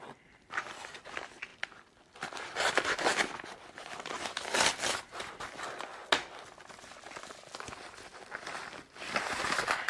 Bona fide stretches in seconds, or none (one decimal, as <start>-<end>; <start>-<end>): 0.0-9.9

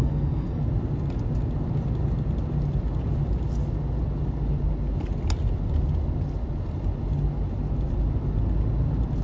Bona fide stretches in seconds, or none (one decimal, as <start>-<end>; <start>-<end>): 0.6-9.2

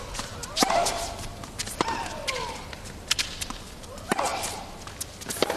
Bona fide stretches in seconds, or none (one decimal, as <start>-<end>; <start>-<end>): 0.0-0.4; 3.8-5.6

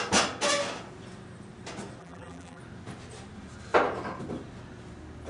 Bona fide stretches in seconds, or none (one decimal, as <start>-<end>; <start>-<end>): 0.0-2.0; 2.6-5.3

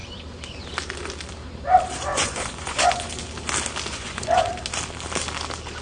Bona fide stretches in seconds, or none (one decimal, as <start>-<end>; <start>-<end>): 0.0-2.1; 3.1-3.9; 4.5-5.8